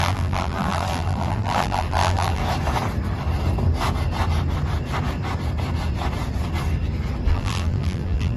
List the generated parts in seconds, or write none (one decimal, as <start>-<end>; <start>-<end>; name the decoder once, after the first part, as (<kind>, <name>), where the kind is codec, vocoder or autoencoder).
0.0-2.4 (vocoder, BigVGAN v2); 7.3-8.4